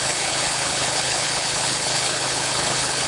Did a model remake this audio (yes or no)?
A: yes